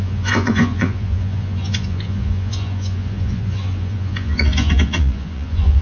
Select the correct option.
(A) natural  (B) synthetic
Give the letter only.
B